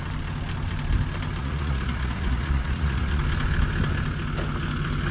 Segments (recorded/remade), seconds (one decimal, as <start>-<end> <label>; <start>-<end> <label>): 0.0-1.4 recorded; 1.4-3.2 remade; 3.2-5.1 recorded